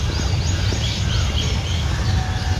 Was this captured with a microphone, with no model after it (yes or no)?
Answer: yes